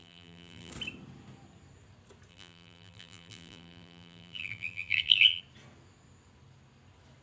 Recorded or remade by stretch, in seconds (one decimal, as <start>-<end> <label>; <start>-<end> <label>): 0.0-0.7 remade; 0.7-2.3 recorded; 2.3-5.4 remade; 5.4-7.2 recorded